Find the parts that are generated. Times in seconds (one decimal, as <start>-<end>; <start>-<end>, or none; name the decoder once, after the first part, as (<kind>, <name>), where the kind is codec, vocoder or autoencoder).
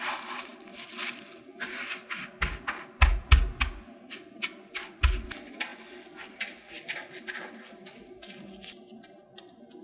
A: none